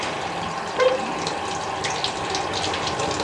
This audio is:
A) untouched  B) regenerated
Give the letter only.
A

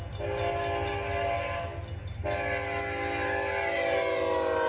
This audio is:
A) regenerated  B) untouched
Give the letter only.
B